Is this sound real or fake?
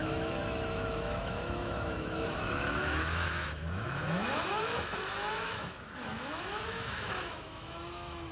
fake